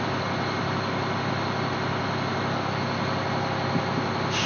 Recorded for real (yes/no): yes